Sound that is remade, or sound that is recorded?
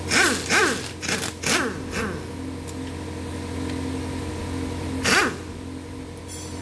recorded